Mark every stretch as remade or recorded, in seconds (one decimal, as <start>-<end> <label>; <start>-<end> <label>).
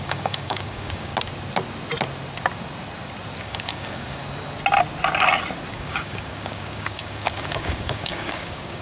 0.0-1.1 remade; 1.1-3.4 recorded; 3.4-4.2 remade; 4.2-5.7 recorded; 5.7-8.8 remade